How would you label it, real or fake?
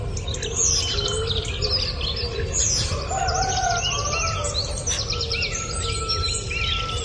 real